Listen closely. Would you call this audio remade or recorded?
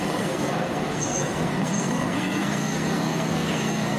remade